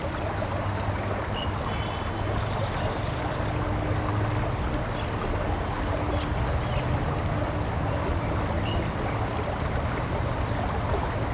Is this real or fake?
real